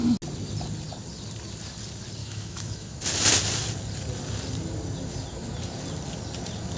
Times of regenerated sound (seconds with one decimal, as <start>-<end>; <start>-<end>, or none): 2.2-3.0